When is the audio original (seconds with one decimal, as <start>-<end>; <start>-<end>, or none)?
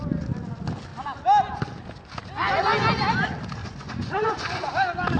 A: 0.0-3.6; 4.7-5.2